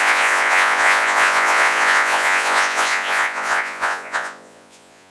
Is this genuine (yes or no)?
no